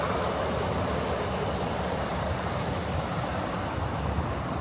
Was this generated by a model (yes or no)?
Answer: no